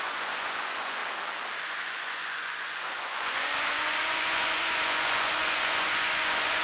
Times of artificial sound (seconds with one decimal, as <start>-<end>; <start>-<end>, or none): 0.0-1.0; 1.6-6.6